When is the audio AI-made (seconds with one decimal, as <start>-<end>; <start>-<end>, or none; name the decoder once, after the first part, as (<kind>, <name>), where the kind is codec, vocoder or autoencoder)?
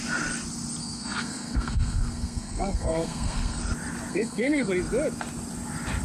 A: 0.8-3.6 (codec, SNAC); 4.1-4.7